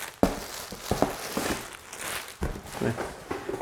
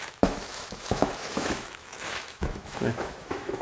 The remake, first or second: second